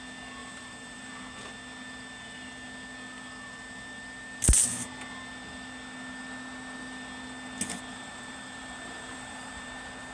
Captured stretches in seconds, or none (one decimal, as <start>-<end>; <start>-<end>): 0.0-0.4; 1.1-7.9; 9.7-10.1